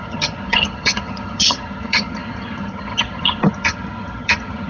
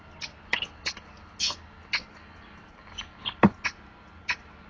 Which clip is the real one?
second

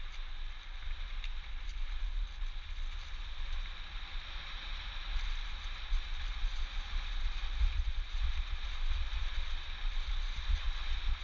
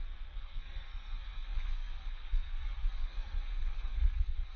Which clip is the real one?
first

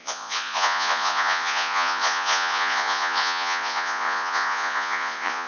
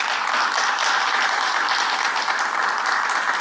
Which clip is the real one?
second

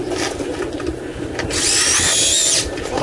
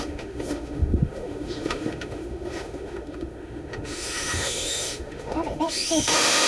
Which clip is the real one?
first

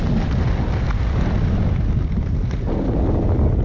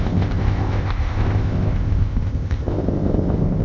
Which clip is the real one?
first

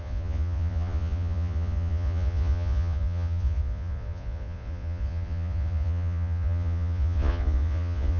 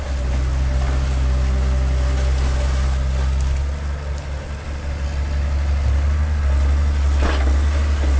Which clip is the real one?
second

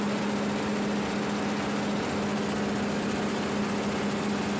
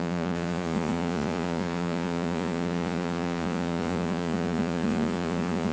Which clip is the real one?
first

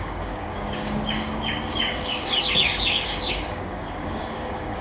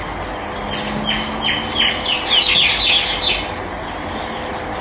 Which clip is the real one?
second